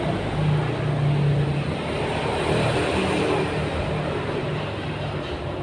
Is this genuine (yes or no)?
yes